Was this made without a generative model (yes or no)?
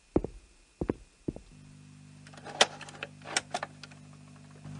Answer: yes